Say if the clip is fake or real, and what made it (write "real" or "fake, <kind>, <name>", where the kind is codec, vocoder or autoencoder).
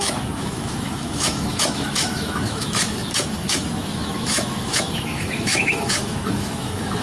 fake, autoencoder, DAC-VAE